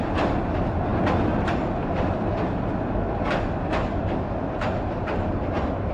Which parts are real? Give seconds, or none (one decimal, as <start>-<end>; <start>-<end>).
0.0-5.9